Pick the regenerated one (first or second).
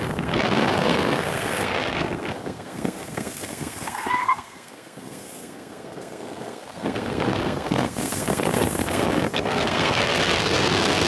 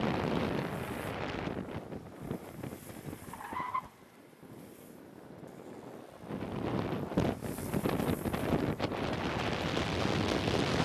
first